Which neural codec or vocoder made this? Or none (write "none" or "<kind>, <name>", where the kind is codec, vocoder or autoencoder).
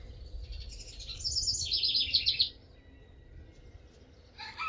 none